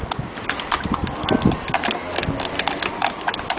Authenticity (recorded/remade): recorded